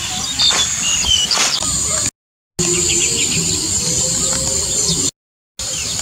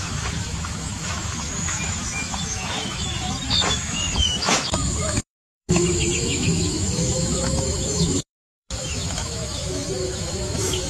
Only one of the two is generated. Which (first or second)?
second